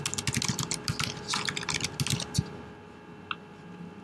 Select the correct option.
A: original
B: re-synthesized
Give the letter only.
A